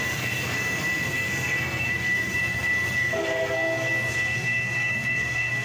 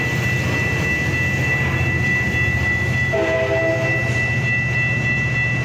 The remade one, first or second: first